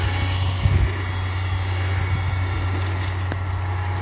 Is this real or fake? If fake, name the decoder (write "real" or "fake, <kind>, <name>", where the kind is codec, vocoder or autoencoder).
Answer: real